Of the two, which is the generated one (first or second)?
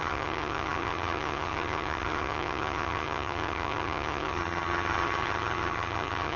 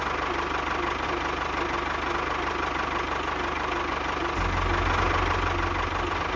first